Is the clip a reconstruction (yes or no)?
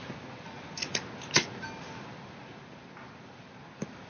no